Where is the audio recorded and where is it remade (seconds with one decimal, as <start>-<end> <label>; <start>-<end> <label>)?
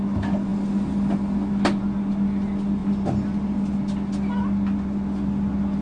0.0-5.8 recorded